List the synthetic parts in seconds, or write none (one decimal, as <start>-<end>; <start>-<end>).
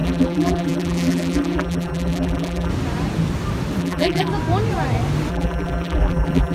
0.0-2.7; 3.8-4.3; 5.3-6.5